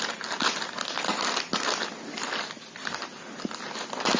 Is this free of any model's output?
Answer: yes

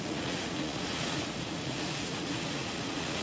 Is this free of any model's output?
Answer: no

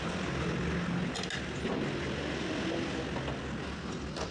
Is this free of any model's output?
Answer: yes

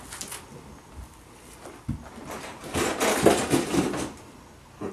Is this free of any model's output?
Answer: yes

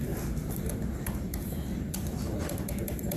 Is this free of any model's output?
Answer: no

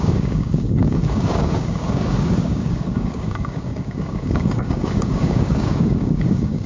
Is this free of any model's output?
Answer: no